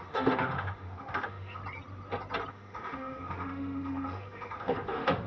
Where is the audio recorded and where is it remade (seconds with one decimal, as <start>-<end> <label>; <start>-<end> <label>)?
0.0-1.6 remade; 1.6-2.5 recorded; 2.5-5.3 remade